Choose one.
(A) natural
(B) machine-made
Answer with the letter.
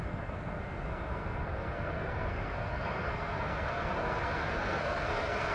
B